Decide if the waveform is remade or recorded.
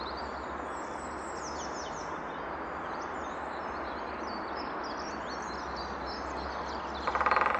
recorded